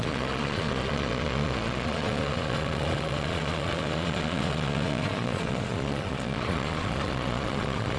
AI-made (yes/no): yes